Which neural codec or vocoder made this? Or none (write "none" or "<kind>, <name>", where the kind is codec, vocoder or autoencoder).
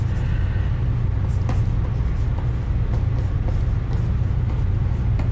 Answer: none